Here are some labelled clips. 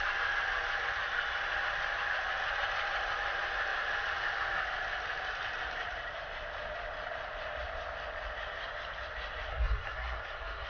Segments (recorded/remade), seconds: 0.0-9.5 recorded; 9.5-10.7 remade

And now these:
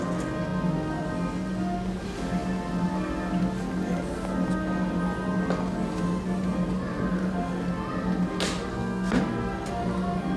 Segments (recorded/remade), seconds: 0.0-8.7 recorded; 8.7-9.2 remade; 9.2-10.4 recorded

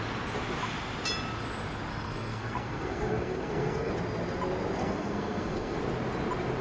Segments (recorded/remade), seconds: 0.0-1.9 recorded; 1.9-3.9 remade; 3.9-4.8 recorded; 4.8-5.8 remade; 5.8-6.6 recorded

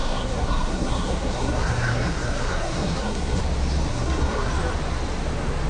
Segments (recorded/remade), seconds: 0.0-3.4 remade; 3.4-3.9 recorded; 3.9-4.5 remade; 4.5-5.7 recorded

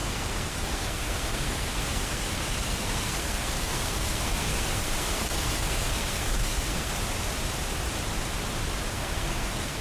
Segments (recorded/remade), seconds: 0.0-6.9 remade; 6.9-8.9 recorded; 8.9-9.8 remade

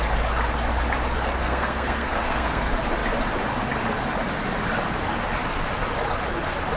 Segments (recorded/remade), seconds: 0.0-1.4 recorded; 1.4-2.6 remade; 2.6-6.8 recorded

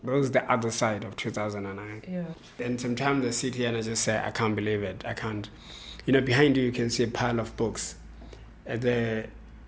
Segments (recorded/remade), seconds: 0.0-9.7 recorded

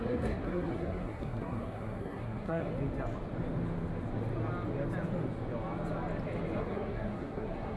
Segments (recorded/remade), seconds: 0.0-2.7 remade; 2.7-6.6 recorded; 6.6-7.8 remade